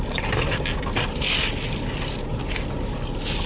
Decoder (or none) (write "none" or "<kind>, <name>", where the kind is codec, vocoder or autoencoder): none